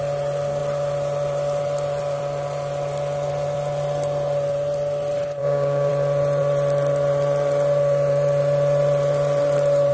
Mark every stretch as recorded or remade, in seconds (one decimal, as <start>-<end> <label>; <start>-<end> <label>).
0.0-5.4 recorded; 5.4-5.9 remade; 5.9-9.9 recorded